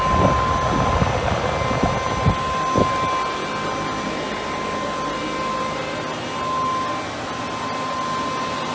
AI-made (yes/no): no